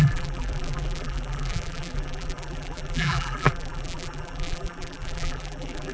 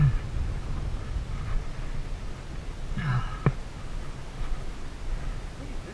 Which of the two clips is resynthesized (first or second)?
first